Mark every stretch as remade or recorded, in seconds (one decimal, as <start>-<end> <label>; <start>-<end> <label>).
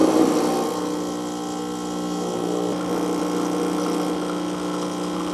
0.0-5.3 recorded